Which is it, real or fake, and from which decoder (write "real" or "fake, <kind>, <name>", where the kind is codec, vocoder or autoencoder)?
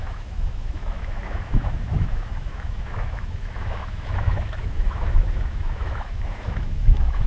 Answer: fake, autoencoder, DAC-VAE